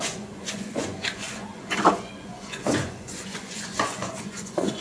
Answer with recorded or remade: remade